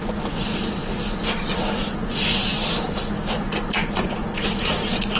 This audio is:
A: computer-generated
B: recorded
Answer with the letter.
A